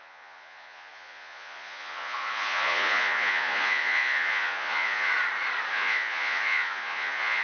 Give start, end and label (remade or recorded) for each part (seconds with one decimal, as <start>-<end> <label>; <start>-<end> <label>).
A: 0.0-5.1 remade; 5.1-5.7 recorded; 5.7-7.4 remade